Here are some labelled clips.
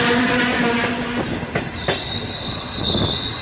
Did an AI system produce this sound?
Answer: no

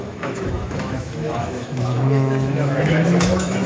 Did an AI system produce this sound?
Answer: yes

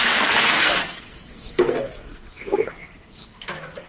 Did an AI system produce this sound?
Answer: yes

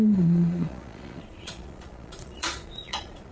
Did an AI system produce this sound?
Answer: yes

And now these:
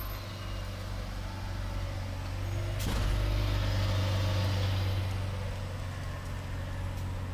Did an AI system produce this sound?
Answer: no